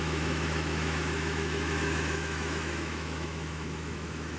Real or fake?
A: fake